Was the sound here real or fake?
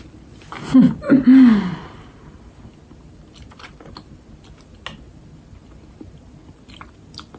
real